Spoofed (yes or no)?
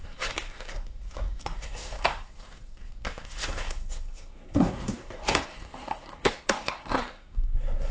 yes